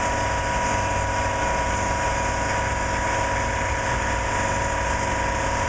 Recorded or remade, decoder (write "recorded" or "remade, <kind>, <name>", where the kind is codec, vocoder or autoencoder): recorded